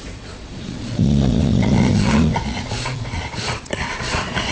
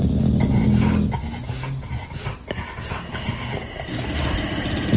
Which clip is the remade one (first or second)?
first